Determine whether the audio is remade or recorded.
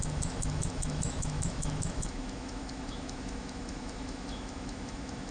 remade